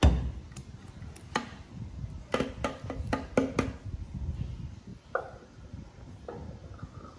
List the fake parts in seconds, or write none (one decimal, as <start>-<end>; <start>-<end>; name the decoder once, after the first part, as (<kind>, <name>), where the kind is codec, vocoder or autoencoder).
4.9-5.9 (vocoder, BigVGAN v2)